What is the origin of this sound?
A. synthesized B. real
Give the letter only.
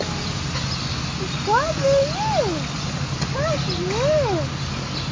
B